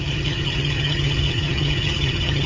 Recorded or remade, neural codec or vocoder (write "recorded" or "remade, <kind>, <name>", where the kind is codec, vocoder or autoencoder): remade, vocoder, HiFi-GAN